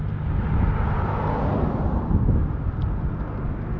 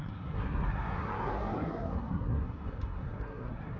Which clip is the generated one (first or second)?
second